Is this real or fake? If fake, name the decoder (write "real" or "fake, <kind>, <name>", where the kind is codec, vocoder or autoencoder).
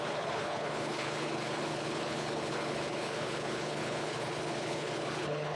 fake, codec, HILCodec